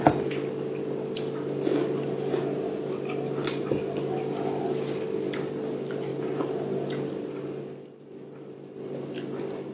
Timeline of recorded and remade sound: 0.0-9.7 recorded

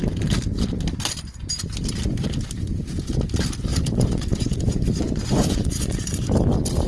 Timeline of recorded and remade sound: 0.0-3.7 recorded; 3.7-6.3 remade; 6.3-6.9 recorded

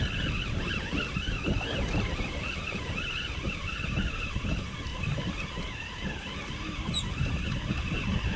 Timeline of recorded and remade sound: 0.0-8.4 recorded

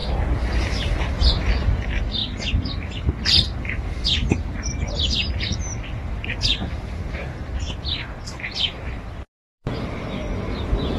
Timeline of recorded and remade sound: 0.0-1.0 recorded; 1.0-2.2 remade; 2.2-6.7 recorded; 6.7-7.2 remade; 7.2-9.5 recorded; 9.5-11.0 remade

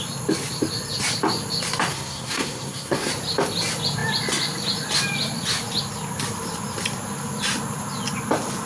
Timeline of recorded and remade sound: 0.0-1.9 recorded; 1.9-3.1 remade; 3.1-8.7 recorded

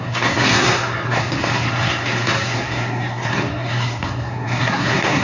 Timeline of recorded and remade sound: 0.0-5.2 remade

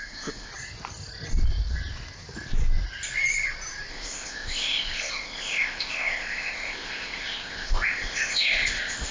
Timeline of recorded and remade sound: 0.0-0.5 remade; 0.5-3.9 recorded; 3.9-9.1 remade